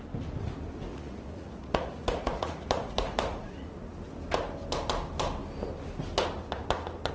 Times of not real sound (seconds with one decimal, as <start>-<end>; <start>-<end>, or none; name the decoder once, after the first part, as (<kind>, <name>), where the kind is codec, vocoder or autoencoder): 0.9-3.8 (vocoder, Vocos)